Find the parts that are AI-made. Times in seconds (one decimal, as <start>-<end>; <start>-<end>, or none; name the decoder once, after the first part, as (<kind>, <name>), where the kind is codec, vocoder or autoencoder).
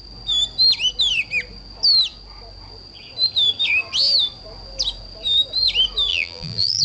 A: 6.1-6.8 (vocoder, BigVGAN v2)